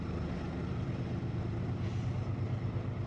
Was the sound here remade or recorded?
recorded